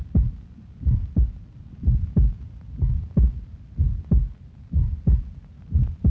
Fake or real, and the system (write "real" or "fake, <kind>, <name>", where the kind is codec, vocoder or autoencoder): real